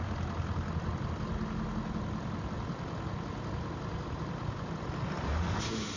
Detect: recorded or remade recorded